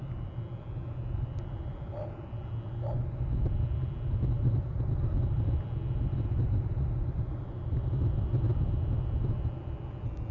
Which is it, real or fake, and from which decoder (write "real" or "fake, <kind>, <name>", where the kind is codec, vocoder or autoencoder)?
real